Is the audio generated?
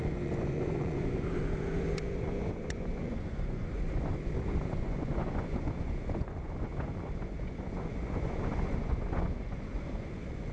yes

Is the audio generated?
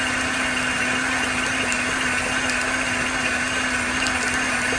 no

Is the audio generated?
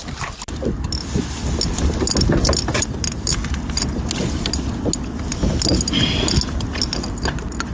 no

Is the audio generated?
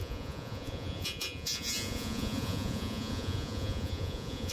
yes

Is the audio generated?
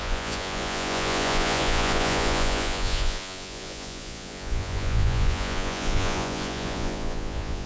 yes